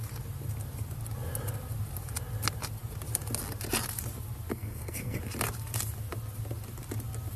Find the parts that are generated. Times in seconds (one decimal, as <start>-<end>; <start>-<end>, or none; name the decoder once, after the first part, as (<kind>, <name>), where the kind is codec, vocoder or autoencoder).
4.5-5.2 (codec, SNAC)